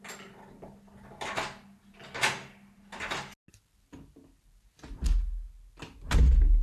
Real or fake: real